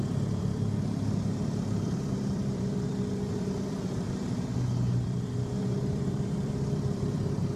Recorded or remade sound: remade